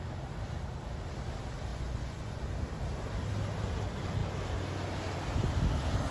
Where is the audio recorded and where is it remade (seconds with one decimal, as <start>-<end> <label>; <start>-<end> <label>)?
0.0-1.7 recorded; 1.7-2.4 remade; 2.4-6.1 recorded